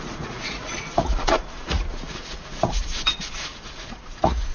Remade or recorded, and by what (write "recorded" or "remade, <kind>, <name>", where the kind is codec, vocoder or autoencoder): remade, vocoder, Vocos